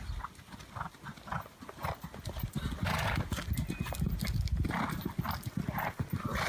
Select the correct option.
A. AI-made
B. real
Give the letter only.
B